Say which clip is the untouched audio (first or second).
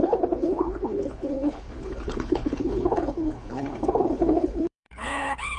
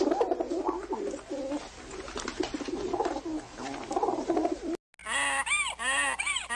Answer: second